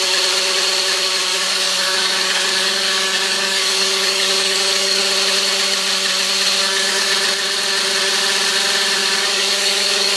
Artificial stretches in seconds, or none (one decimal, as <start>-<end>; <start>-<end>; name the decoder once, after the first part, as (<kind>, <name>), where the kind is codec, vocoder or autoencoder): 1.3-5.0 (codec, DAC); 6.6-7.1; 9.0-10.2

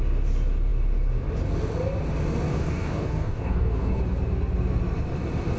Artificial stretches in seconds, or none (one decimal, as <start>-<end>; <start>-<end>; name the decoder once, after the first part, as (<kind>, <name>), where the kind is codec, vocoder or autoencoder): 2.5-4.0 (codec, DAC)